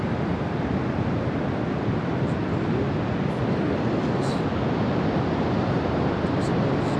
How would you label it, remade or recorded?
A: recorded